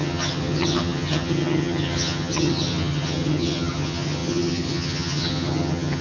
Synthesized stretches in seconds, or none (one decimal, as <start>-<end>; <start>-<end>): 0.0-6.0